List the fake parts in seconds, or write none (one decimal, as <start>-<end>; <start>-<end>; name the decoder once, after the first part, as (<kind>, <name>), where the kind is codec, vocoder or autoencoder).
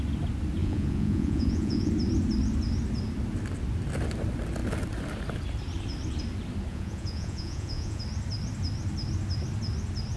0.6-1.9 (vocoder, Vocos); 6.7-8.0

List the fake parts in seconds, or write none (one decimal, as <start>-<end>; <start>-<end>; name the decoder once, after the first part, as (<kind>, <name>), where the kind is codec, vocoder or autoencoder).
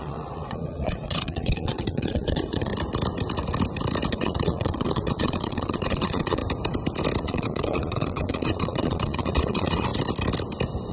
0.0-2.7 (vocoder, Vocos); 4.1-6.4; 7.2-9.9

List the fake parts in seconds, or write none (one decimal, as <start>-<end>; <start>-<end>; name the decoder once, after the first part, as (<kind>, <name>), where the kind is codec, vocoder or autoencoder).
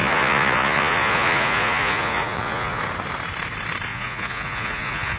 0.0-2.8 (vocoder, Vocos); 3.9-5.2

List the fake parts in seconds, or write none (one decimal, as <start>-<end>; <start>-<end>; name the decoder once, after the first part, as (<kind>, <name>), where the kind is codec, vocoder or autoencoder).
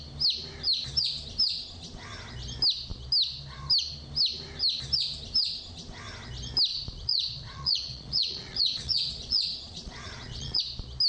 6.7-10.6 (vocoder, Vocos)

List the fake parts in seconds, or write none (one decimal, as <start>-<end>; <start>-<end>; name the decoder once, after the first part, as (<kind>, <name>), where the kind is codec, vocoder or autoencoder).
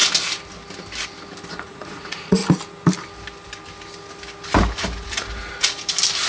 1.5-2.4 (vocoder, Vocos)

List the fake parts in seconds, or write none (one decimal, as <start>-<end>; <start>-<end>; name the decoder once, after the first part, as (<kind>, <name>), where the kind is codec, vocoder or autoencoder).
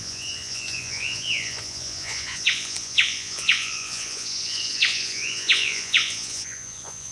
0.0-7.1 (vocoder, Vocos)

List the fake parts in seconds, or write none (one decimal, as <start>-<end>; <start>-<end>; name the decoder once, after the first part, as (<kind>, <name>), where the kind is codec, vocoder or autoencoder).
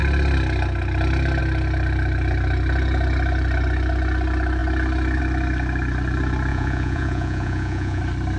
6.5-8.0 (vocoder, Vocos)